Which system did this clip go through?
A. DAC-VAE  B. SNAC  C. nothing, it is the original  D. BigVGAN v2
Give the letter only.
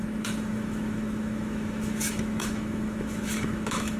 A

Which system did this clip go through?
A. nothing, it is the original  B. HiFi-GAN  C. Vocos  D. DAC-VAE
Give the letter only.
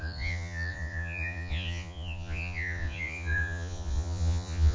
C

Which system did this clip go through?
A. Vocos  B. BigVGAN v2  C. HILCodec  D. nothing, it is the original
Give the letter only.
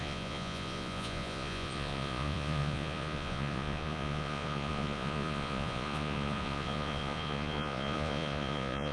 A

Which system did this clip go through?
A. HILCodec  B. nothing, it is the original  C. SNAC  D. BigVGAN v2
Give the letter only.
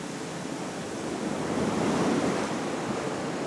B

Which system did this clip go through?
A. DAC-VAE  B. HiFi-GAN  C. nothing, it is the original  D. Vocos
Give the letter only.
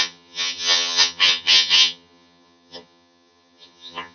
B